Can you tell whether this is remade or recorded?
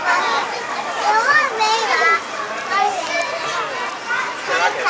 recorded